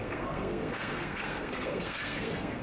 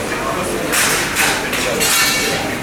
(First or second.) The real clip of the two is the second